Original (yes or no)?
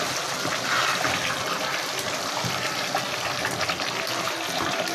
yes